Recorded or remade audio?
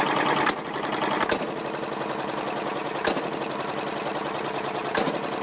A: recorded